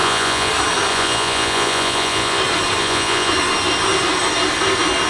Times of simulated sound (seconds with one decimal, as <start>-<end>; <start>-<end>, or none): 0.0-0.5; 0.9-2.4; 2.8-3.3